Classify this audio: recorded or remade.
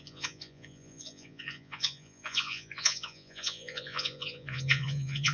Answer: remade